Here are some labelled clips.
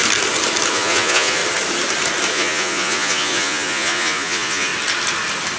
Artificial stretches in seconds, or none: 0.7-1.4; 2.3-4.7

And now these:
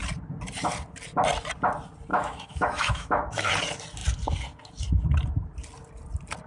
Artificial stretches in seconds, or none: 2.1-3.5

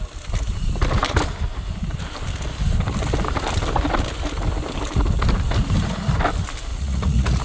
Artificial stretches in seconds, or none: 6.7-7.4